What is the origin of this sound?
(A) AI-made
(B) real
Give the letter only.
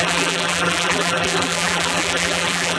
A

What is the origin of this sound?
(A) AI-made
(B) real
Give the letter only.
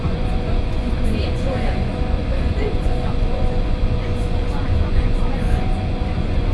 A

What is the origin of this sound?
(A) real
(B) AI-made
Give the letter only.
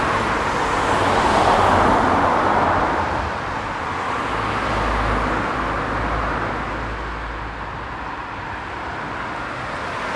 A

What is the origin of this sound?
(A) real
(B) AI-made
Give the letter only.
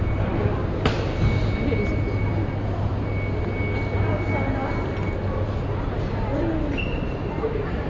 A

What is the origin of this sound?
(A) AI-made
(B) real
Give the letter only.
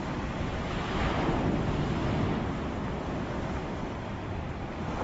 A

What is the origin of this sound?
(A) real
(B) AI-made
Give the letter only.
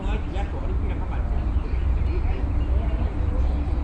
A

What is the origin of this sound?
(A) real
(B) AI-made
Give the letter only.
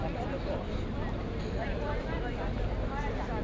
A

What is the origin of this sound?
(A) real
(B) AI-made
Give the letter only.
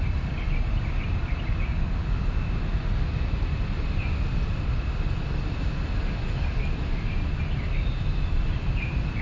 A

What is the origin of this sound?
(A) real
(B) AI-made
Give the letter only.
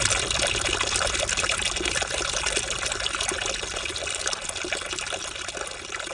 A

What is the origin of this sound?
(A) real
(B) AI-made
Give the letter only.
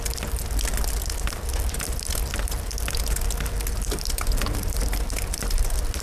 A